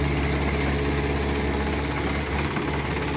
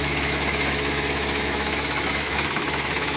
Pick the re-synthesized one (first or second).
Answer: second